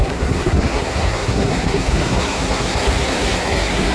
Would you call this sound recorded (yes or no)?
no